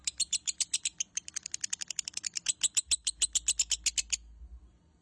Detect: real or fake real